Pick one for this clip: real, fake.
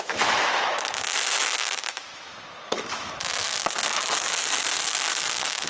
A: fake